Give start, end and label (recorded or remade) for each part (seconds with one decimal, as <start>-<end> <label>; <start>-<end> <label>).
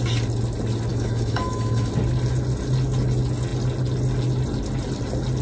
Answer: 0.0-0.9 recorded; 0.9-1.9 remade; 1.9-5.4 recorded